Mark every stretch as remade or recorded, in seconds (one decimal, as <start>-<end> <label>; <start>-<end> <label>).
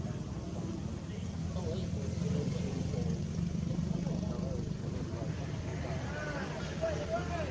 0.0-7.5 recorded